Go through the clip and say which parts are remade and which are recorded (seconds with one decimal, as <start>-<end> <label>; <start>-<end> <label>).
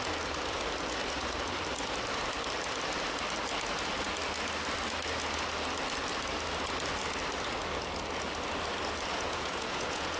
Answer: 0.0-9.1 recorded; 9.1-10.2 remade